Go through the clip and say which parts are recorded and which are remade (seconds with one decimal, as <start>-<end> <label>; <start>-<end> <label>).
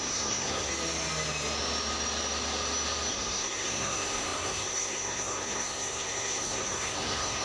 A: 0.0-0.7 remade; 0.7-3.1 recorded; 3.1-7.4 remade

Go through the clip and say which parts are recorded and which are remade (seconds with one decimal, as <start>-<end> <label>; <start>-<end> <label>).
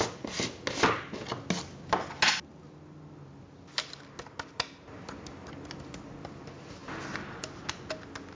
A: 0.0-8.3 recorded